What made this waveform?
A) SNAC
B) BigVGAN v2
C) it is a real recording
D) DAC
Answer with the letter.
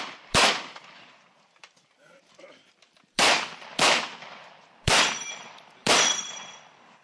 B